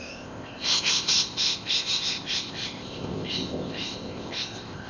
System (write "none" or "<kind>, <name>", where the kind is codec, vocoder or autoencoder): codec, ZipCodec